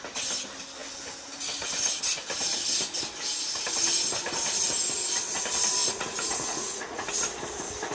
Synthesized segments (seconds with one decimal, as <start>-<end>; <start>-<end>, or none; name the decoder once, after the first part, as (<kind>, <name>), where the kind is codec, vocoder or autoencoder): 5.8-7.1 (vocoder, Vocos)